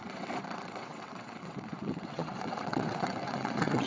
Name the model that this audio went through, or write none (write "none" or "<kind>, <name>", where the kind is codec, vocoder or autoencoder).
vocoder, WaveNeXt